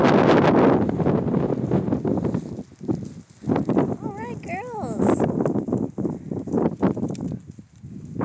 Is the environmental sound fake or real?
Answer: real